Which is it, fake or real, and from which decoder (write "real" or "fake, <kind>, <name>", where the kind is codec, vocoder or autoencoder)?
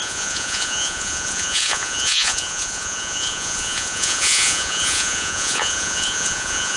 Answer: fake, vocoder, Vocos